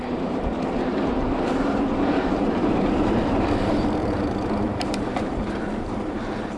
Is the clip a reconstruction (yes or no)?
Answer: yes